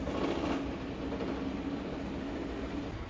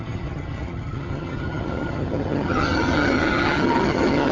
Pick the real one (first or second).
first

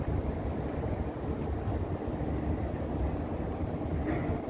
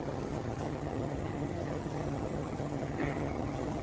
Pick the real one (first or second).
first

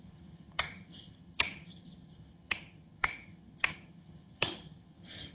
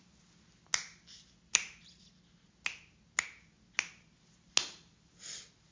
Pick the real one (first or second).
second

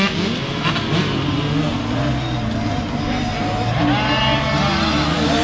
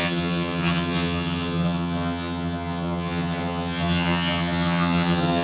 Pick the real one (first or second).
first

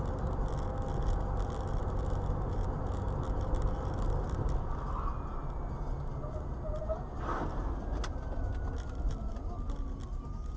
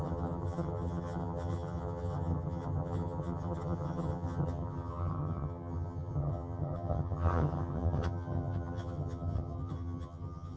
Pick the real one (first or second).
first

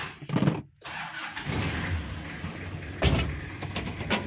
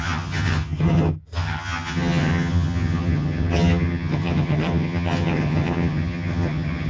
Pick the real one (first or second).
first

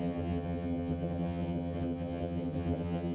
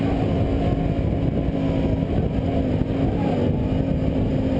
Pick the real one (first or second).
second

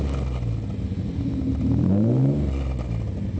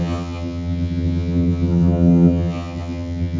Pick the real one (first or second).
first